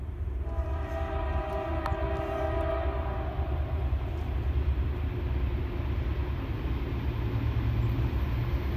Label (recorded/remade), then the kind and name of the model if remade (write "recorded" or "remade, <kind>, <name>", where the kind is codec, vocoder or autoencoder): recorded